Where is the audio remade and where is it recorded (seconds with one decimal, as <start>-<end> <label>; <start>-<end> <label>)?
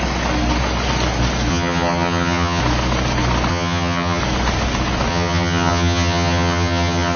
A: 0.0-1.5 recorded; 1.5-2.6 remade; 2.6-3.5 recorded; 3.5-4.2 remade; 4.2-5.1 recorded; 5.1-7.2 remade